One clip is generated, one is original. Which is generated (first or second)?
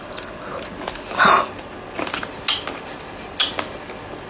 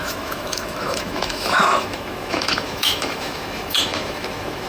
second